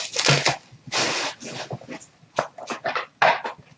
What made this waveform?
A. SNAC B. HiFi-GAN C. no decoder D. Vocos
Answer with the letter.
C